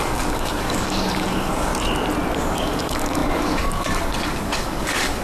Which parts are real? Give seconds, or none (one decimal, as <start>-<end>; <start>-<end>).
1.7-2.4